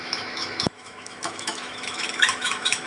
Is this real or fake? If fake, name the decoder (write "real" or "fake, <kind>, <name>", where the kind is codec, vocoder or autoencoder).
fake, autoencoder, DAC-VAE